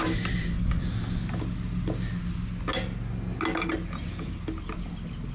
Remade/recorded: recorded